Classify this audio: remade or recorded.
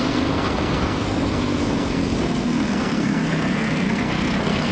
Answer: remade